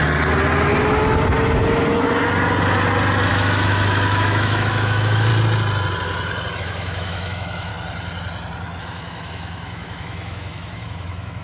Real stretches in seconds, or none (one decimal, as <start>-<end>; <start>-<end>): 0.0-3.3; 5.3-6.6; 7.7-8.8